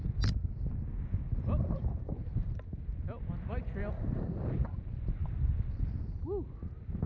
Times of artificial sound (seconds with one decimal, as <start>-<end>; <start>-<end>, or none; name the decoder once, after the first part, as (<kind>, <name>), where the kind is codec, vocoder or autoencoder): none